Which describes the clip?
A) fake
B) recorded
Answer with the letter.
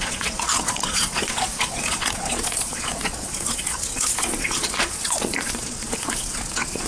A